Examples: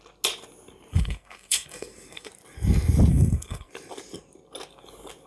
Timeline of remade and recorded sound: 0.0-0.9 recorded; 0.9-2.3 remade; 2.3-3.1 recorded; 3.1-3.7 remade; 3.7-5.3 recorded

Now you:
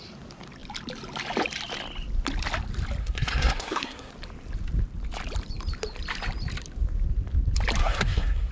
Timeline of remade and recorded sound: 0.0-3.0 recorded; 3.0-4.1 remade; 4.1-7.8 recorded; 7.8-8.5 remade